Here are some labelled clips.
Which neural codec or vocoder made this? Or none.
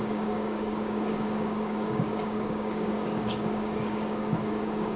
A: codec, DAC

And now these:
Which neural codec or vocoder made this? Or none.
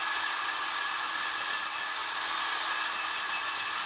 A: none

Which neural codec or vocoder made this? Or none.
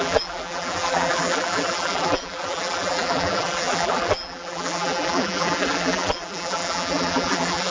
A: vocoder, BigVGAN v2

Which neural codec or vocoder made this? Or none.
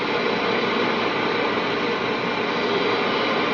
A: none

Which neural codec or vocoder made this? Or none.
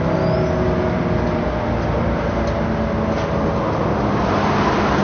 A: none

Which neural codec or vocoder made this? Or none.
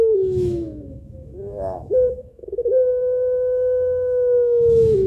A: autoencoder, DAC-VAE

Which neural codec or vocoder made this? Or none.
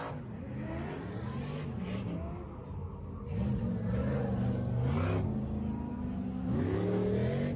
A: none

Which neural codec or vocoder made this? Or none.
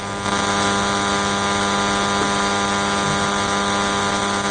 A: none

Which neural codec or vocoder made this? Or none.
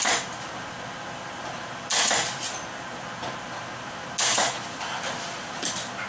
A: none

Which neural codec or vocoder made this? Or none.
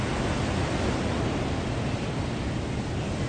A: none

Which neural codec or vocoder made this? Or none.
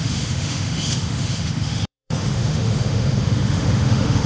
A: autoencoder, DAC-VAE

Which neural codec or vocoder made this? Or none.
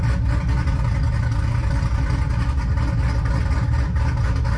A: none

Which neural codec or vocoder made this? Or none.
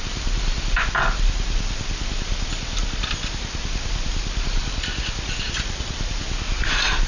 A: none